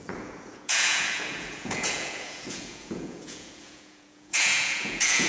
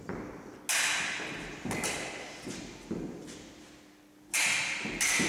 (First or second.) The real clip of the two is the second